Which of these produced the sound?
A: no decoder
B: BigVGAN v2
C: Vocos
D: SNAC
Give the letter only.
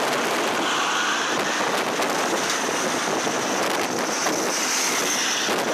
A